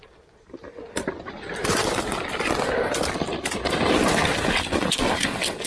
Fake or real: real